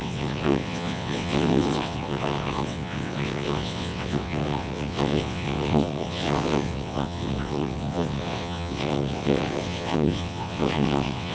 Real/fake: fake